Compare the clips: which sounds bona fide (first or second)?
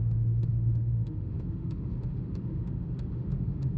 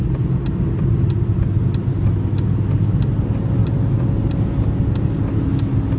second